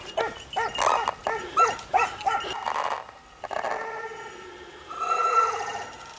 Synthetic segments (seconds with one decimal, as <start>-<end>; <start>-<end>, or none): none